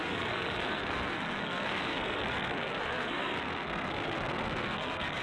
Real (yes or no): no